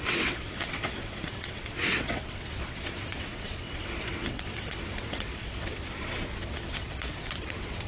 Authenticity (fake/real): fake